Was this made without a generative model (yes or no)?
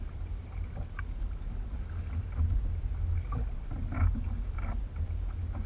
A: yes